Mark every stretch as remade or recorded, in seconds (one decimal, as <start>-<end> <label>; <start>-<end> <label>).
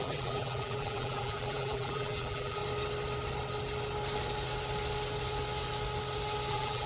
0.0-2.6 remade; 2.6-6.5 recorded; 6.5-6.9 remade